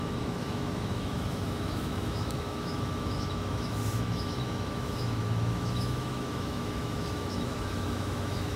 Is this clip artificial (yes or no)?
yes